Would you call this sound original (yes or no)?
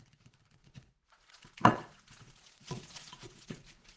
no